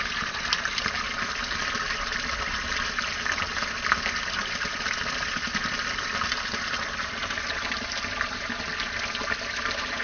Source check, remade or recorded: recorded